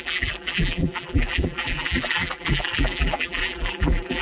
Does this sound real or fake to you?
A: fake